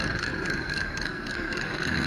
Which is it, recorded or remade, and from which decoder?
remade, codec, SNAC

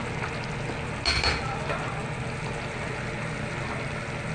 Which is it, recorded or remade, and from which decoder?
recorded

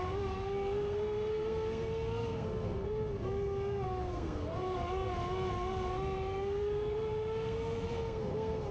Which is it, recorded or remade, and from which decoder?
remade, codec, SNAC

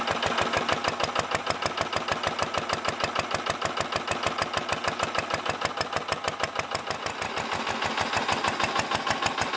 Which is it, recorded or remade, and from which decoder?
recorded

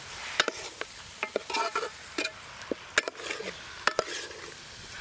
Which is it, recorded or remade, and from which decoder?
recorded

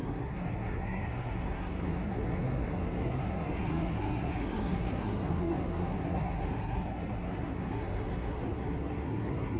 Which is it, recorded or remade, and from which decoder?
remade, codec, SNAC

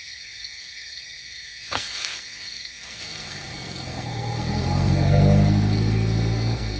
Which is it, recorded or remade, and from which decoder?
remade, codec, SNAC